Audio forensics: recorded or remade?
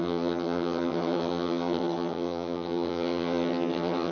remade